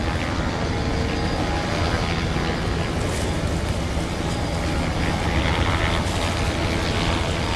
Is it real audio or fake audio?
real